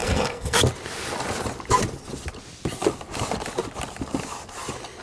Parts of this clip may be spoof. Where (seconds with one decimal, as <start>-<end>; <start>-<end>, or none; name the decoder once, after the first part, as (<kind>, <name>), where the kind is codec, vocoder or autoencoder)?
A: 0.0-0.6 (codec, SNAC)